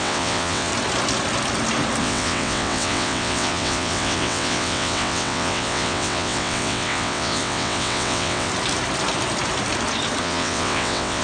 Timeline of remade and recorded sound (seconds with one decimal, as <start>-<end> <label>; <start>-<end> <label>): 0.0-0.7 remade; 0.7-2.0 recorded; 2.0-8.5 remade; 8.5-10.2 recorded; 10.2-11.2 remade